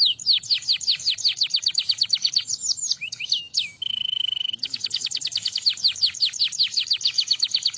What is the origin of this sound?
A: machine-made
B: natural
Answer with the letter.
A